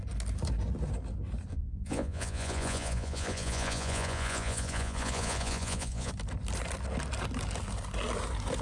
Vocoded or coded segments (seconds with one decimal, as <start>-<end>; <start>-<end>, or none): 1.5-6.1